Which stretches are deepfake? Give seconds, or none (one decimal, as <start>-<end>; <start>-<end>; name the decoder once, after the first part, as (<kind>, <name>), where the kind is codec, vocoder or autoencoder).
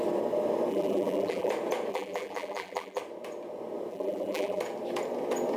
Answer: 0.7-1.5 (vocoder, BigVGAN v2); 1.9-3.0; 3.9-4.6